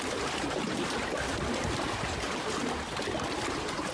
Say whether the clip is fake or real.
real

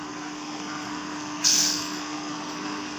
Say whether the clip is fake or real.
fake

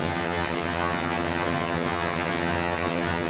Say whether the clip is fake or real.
fake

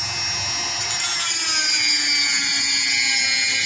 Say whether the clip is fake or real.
real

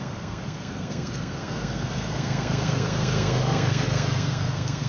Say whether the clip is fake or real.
fake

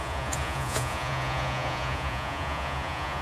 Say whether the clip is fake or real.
fake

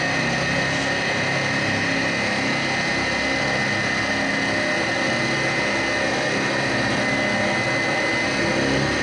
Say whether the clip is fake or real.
real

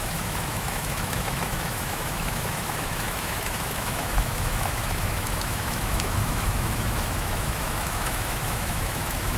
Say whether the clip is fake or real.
fake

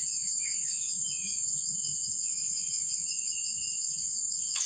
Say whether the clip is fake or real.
fake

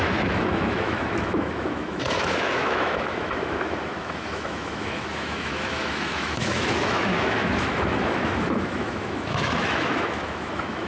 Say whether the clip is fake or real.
fake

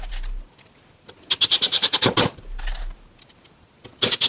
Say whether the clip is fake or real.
real